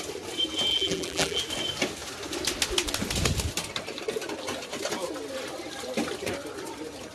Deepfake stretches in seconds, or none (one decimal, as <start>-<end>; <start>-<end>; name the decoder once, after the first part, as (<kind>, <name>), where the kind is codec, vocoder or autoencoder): 0.7-1.4 (vocoder, BigVGAN v2)